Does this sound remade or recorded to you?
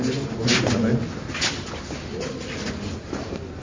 recorded